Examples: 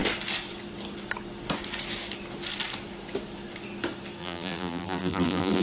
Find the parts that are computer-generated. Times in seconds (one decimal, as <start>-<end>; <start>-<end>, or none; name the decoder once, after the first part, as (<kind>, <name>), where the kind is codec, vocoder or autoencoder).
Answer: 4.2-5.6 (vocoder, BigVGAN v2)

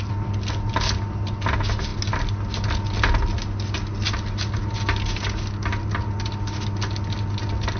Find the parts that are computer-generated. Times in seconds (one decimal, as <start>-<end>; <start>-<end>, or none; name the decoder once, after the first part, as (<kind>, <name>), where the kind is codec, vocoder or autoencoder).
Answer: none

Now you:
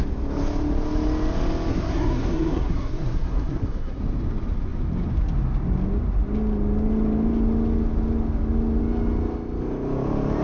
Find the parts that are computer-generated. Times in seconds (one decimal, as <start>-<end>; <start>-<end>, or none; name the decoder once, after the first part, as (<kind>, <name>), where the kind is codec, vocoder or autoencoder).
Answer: 1.7-4.0 (codec, SNAC)

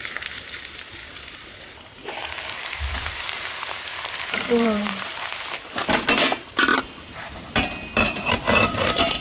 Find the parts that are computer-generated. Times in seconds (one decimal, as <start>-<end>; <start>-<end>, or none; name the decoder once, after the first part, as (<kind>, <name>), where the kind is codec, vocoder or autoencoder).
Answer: 0.0-1.0 (vocoder, BigVGAN v2); 3.0-9.2

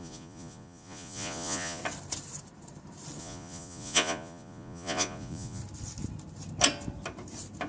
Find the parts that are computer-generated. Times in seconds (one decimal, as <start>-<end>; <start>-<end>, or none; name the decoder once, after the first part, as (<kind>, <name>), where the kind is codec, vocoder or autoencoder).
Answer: 0.0-1.8 (vocoder, Vocos); 3.2-5.6

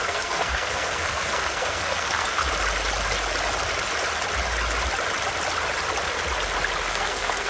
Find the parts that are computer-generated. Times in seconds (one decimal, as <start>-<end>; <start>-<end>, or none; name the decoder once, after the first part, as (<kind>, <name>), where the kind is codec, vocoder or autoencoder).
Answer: 0.0-2.4 (codec, SNAC); 6.9-7.5